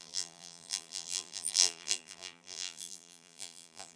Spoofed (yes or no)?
yes